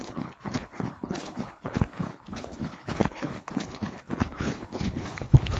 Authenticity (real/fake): fake